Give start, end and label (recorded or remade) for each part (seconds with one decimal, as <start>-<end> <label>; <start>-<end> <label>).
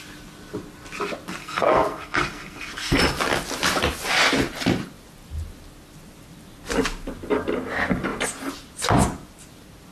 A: 0.0-1.4 recorded; 1.4-3.0 remade; 3.0-9.9 recorded